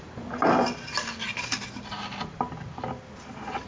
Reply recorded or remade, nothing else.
recorded